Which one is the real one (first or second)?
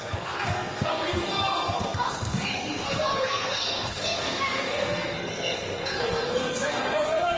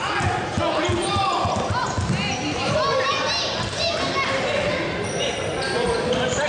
second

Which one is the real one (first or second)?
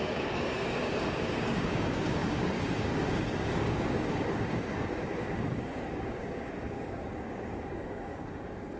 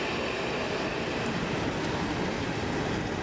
second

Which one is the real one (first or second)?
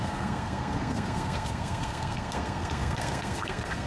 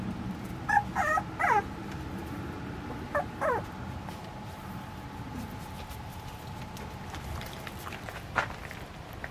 second